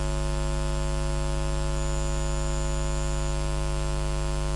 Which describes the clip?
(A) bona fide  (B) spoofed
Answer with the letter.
A